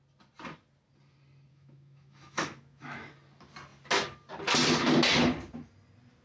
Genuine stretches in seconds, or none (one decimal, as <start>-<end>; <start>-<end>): 0.0-1.5; 3.1-6.2